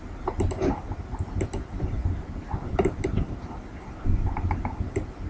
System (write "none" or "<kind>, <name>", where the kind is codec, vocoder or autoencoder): none